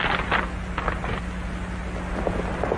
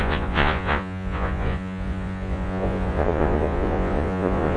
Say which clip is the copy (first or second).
second